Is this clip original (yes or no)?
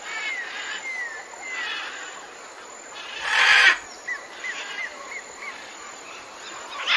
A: yes